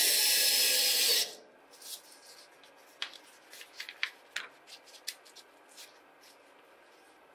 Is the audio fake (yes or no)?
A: no